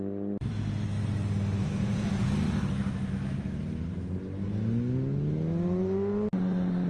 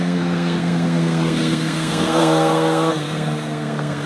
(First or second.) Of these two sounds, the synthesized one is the second